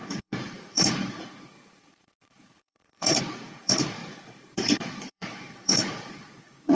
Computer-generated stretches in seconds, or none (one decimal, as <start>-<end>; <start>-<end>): 0.0-6.7